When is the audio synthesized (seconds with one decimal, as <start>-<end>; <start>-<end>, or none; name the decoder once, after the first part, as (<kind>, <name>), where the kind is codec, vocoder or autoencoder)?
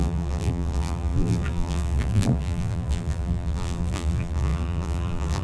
0.0-5.4 (vocoder, BigVGAN v2)